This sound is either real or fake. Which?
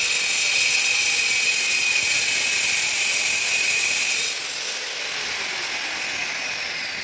real